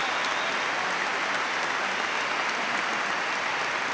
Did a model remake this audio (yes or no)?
no